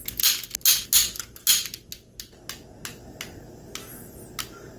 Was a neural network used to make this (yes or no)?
no